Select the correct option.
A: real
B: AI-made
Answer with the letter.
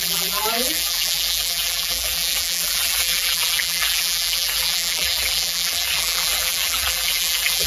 B